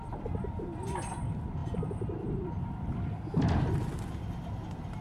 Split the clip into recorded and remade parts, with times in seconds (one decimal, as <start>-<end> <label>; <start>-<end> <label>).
0.0-1.6 recorded; 1.6-3.7 remade; 3.7-5.0 recorded